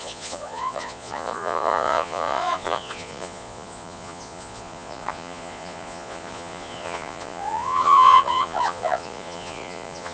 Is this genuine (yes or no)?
no